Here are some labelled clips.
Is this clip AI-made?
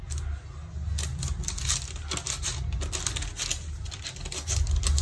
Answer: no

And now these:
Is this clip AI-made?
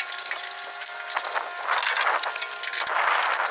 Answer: no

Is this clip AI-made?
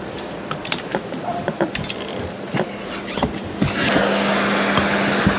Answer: no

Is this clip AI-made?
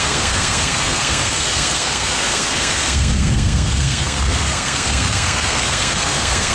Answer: yes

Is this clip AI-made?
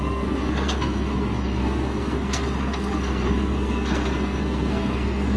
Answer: yes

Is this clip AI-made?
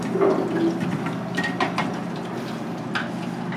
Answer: no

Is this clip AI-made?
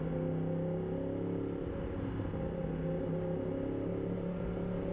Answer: no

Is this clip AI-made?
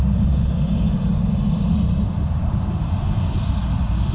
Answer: no